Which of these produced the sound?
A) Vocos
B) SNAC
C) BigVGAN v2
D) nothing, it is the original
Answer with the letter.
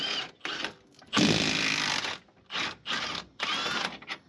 D